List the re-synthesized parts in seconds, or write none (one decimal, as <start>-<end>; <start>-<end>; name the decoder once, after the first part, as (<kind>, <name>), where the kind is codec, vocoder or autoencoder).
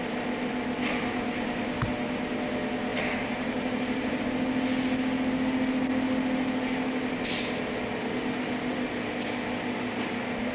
2.9-4.2 (vocoder, BigVGAN v2)